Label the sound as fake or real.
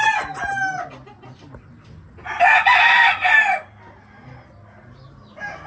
real